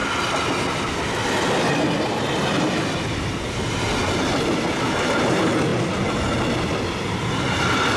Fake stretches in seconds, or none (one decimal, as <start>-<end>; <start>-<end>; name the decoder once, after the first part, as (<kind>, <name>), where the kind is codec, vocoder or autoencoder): none